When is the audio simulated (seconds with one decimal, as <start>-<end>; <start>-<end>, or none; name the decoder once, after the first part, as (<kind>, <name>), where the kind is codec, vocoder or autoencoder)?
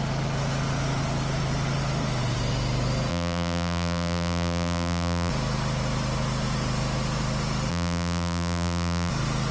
3.1-5.3 (vocoder, BigVGAN v2); 7.7-9.1